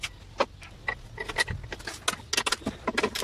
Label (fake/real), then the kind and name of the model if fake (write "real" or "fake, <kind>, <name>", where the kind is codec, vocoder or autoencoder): real